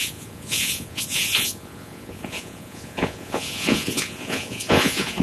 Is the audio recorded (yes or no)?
no